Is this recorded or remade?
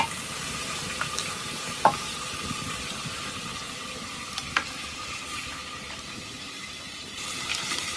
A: recorded